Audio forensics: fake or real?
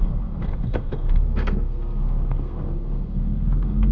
fake